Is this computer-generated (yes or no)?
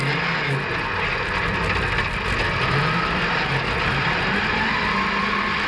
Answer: no